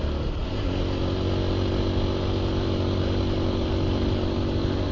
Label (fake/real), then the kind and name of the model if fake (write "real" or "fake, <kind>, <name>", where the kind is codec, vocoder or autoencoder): real